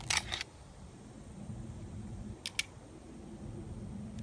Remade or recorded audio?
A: recorded